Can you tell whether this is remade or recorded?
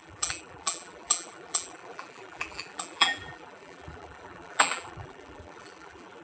remade